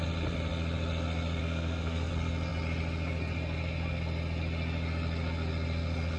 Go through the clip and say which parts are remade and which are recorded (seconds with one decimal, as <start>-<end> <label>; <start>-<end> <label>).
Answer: 0.0-1.4 recorded; 1.4-2.1 remade; 2.1-6.2 recorded